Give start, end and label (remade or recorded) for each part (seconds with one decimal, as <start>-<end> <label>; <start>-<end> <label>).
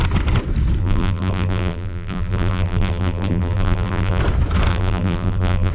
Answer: 0.0-0.8 recorded; 0.8-4.2 remade; 4.2-4.7 recorded; 4.7-5.7 remade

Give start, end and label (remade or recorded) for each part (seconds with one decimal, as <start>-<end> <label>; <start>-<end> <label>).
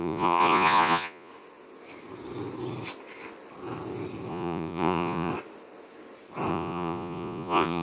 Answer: 0.0-1.3 remade; 1.3-4.3 recorded; 4.3-5.3 remade; 5.3-6.5 recorded; 6.5-7.8 remade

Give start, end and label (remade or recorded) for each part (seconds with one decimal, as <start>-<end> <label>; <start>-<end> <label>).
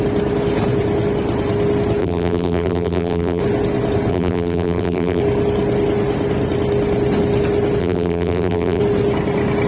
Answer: 0.0-2.0 recorded; 2.0-3.4 remade; 3.4-4.1 recorded; 4.1-5.2 remade; 5.2-7.8 recorded; 7.8-8.8 remade; 8.8-9.7 recorded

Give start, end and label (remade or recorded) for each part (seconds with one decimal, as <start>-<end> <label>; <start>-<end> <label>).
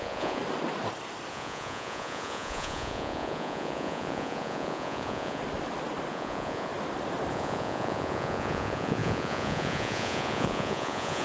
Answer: 0.0-0.4 remade; 0.4-1.3 recorded; 1.3-5.4 remade; 5.4-6.1 recorded; 6.1-6.7 remade; 6.7-7.3 recorded; 7.3-11.2 remade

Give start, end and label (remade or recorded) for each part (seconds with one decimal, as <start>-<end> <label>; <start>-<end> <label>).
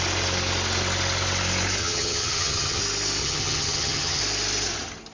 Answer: 0.0-1.8 recorded; 1.8-2.8 remade; 2.8-3.2 recorded; 3.2-4.2 remade; 4.2-5.1 recorded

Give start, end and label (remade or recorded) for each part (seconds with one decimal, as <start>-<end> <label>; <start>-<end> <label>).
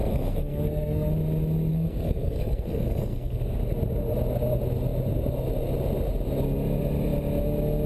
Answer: 0.0-1.1 remade; 1.1-1.7 recorded; 1.7-3.4 remade; 3.4-7.9 recorded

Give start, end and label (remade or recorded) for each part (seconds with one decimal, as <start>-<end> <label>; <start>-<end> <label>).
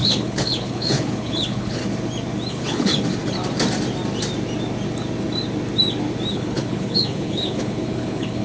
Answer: 0.0-1.8 remade; 1.8-2.5 recorded; 2.5-2.9 remade; 2.9-6.3 recorded; 6.3-8.4 remade